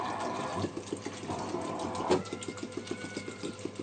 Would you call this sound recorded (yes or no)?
yes